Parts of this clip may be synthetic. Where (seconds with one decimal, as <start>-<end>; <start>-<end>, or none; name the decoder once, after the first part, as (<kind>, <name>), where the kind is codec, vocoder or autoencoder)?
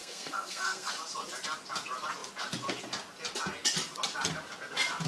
0.0-0.9 (codec, SNAC)